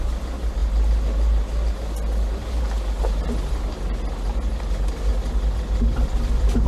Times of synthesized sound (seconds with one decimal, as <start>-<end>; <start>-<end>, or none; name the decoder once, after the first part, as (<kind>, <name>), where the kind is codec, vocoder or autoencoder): none